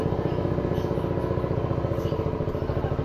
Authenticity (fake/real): real